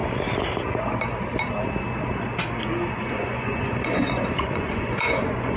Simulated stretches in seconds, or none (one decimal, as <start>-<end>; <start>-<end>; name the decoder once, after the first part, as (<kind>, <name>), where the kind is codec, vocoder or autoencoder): 2.9-5.6 (vocoder, Vocos)